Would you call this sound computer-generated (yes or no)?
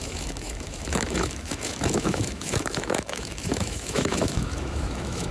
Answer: yes